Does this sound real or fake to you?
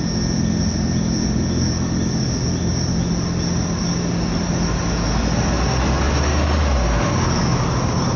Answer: real